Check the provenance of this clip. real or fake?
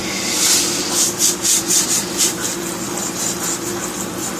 real